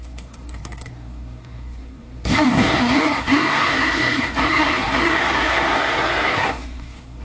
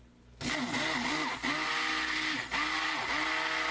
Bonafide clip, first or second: second